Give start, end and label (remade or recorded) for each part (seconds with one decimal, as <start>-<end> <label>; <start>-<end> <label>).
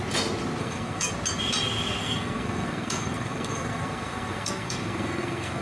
0.0-0.6 recorded; 0.6-1.1 remade; 1.1-2.0 recorded; 2.0-5.6 remade